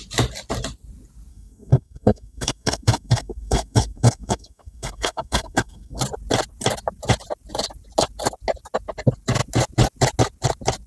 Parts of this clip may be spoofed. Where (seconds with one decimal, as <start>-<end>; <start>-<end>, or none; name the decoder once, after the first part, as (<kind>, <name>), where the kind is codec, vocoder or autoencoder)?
1.3-6.0 (codec, SNAC)